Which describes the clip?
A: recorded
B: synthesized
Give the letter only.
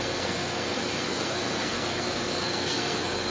B